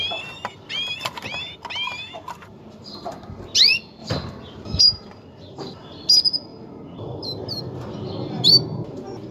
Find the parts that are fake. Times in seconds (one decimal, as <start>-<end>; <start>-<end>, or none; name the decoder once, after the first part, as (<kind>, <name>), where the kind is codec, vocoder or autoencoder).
4.0-4.8 (vocoder, BigVGAN v2)